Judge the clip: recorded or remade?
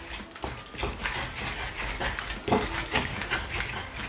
recorded